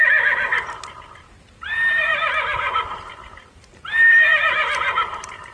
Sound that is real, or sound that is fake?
fake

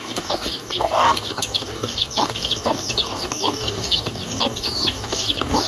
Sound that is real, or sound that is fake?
fake